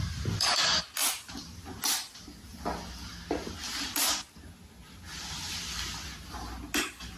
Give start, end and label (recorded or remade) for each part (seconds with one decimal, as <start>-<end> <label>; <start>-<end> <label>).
0.0-7.2 recorded